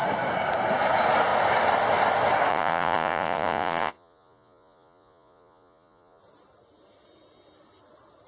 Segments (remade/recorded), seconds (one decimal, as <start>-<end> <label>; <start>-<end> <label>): 0.0-2.5 recorded; 2.5-6.2 remade; 6.2-8.3 recorded